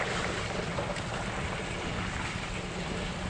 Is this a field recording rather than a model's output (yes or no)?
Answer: yes